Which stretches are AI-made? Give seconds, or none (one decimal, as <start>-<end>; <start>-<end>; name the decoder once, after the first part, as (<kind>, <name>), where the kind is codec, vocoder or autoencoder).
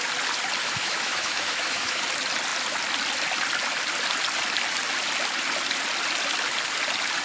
0.6-2.0 (autoencoder, DAC-VAE)